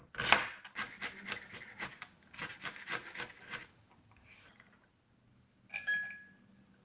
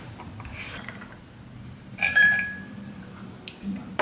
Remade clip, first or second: second